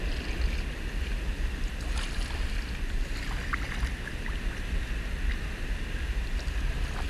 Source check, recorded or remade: recorded